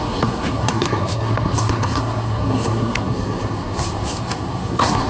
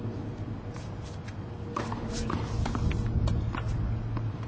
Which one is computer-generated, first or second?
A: first